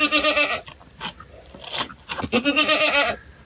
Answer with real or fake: real